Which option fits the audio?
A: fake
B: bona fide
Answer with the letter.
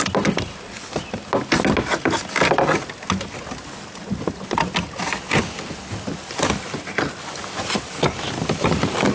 B